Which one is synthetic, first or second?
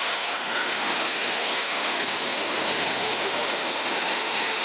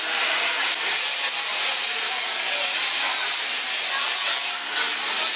first